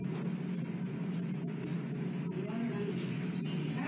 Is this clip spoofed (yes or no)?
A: no